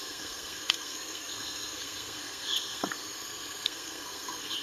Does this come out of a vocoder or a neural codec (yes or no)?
yes